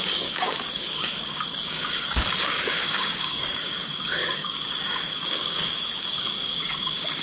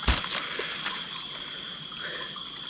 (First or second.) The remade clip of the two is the first